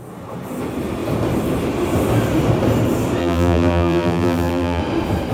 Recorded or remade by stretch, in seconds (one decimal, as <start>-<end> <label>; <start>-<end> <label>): 0.0-3.2 recorded; 3.2-4.8 remade; 4.8-5.3 recorded

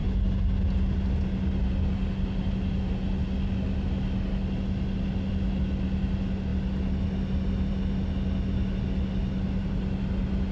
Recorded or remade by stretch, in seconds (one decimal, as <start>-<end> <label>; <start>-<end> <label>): 0.0-10.5 recorded

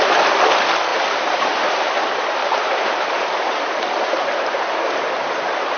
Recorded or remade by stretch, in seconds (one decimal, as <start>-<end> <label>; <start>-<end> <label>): 0.0-0.9 recorded; 0.9-2.0 remade; 2.0-2.4 recorded; 2.4-5.8 remade

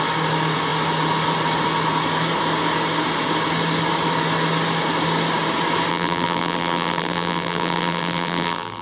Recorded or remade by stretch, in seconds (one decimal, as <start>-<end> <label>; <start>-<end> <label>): 0.0-5.9 recorded; 5.9-8.8 remade

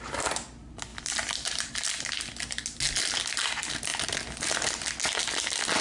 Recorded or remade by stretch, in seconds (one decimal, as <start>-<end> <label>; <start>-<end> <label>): 0.0-5.8 recorded

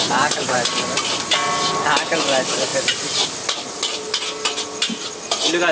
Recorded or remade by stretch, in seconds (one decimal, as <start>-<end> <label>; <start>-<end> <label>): 0.0-2.7 recorded; 2.7-3.4 remade; 3.4-5.7 recorded

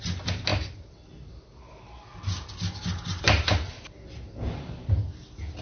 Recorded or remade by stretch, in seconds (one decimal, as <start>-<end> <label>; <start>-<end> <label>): 0.0-5.6 recorded

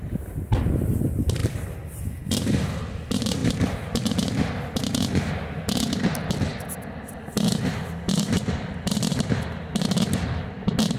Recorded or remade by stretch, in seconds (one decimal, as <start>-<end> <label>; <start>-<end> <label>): 0.0-11.0 recorded